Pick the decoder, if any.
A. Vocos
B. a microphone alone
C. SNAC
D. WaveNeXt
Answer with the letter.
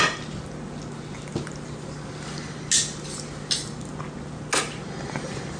B